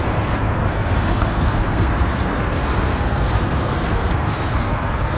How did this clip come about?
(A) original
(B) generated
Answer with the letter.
B